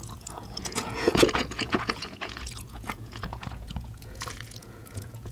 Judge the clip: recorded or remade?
remade